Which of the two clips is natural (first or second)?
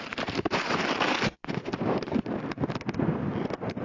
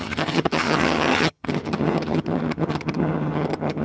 first